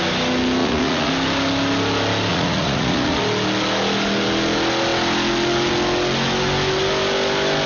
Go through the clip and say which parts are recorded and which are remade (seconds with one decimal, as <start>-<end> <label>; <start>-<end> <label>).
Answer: 0.0-0.6 recorded; 0.6-1.1 remade; 1.1-2.3 recorded; 2.3-3.2 remade; 3.2-7.7 recorded